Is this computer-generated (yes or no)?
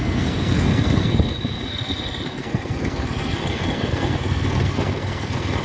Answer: yes